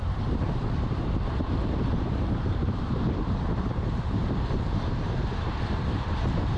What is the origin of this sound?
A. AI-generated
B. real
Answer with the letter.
A